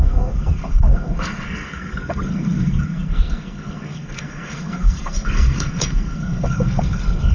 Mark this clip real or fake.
fake